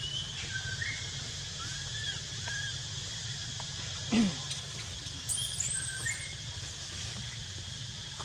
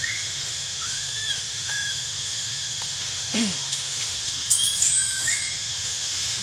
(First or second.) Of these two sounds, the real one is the first